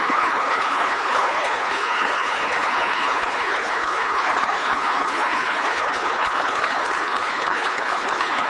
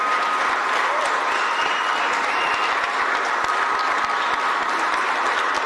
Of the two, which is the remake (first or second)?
first